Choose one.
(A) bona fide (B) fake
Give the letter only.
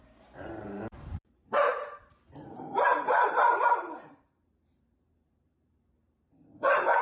B